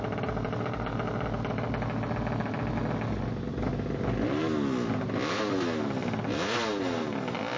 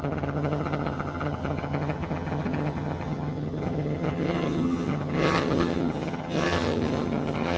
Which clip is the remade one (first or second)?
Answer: second